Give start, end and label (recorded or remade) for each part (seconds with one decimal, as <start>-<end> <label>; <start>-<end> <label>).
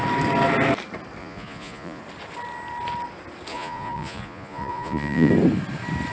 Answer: 0.0-1.2 recorded; 1.2-2.0 remade; 2.0-3.5 recorded; 3.5-5.3 remade; 5.3-6.1 recorded